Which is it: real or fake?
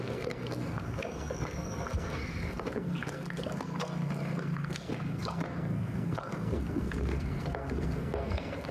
fake